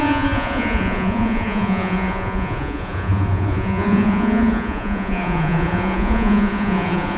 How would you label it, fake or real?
fake